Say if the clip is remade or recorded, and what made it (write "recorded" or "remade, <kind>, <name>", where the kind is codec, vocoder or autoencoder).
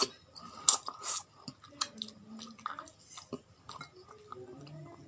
recorded